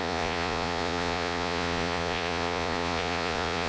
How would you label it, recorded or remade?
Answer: remade